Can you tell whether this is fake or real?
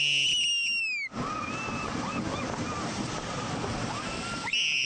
real